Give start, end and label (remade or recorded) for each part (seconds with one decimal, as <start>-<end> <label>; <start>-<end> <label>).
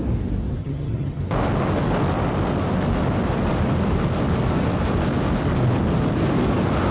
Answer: 0.0-0.6 recorded; 0.6-1.2 remade; 1.2-6.9 recorded